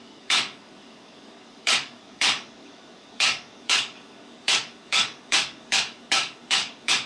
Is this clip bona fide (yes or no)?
no